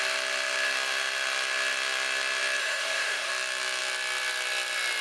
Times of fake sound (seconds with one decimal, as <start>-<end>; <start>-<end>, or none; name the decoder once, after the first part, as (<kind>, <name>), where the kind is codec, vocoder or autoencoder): 2.6-3.3 (autoencoder, DAC-VAE)

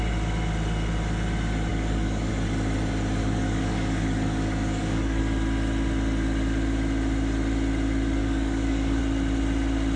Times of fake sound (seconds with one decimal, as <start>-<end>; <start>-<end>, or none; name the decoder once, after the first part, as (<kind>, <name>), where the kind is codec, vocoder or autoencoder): 1.7-2.3 (codec, DAC); 3.2-5.2; 8.2-9.0